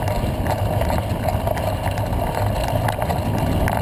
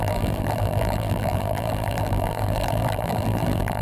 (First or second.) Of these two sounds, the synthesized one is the second